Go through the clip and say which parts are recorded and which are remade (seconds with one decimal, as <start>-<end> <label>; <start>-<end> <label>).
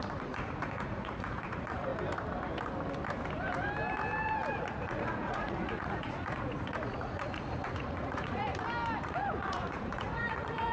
0.0-1.9 remade; 1.9-4.5 recorded; 4.5-8.5 remade; 8.5-9.0 recorded; 9.0-10.7 remade